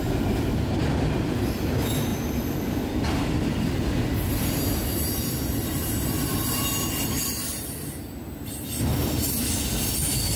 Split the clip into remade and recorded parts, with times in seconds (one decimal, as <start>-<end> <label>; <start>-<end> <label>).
0.0-2.1 recorded; 2.1-4.6 remade; 4.6-10.4 recorded